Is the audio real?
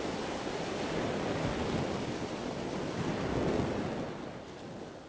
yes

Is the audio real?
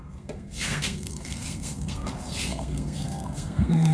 no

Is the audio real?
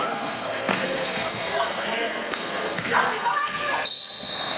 no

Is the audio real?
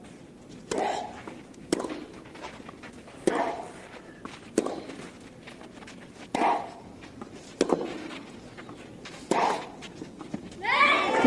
yes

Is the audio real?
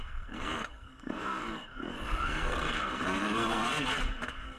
no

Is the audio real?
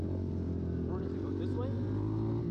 yes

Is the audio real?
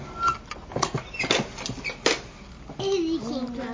yes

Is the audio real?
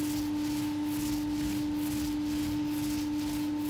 yes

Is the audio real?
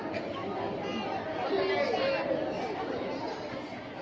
yes